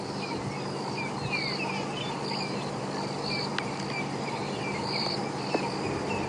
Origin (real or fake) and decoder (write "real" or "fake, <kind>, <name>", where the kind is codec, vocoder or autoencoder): real